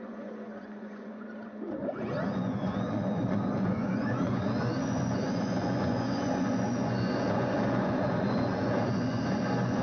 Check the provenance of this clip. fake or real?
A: fake